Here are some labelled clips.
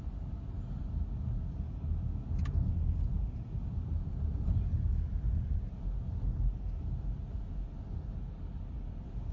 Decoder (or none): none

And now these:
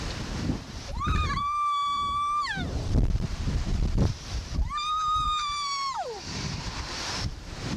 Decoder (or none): vocoder, BigVGAN v2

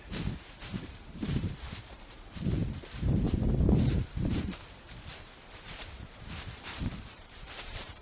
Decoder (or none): vocoder, BigVGAN v2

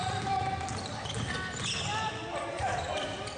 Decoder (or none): none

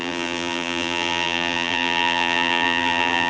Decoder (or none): vocoder, BigVGAN v2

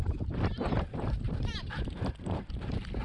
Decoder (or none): vocoder, BigVGAN v2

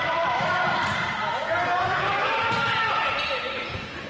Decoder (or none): vocoder, BigVGAN v2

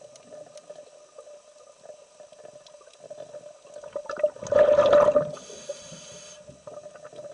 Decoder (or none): none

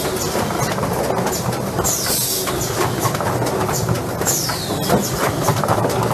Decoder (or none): none